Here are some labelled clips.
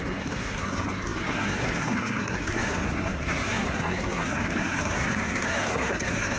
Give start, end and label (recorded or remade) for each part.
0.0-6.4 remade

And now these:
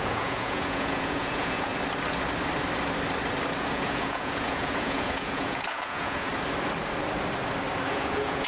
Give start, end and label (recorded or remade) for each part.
0.0-1.7 remade; 1.7-3.6 recorded; 3.6-6.3 remade; 6.3-7.9 recorded; 7.9-8.5 remade